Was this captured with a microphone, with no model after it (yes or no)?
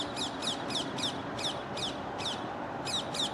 yes